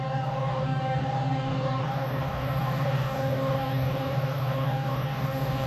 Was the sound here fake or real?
fake